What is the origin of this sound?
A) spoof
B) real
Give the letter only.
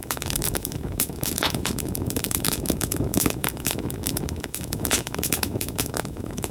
A